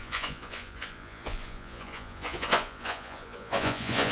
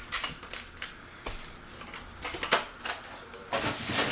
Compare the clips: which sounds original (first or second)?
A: second